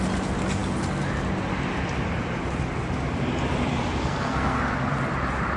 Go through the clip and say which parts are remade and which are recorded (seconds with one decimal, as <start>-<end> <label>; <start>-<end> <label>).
0.0-4.0 recorded; 4.0-4.7 remade; 4.7-5.6 recorded